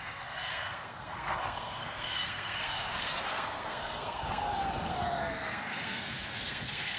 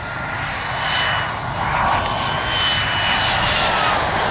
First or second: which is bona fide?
second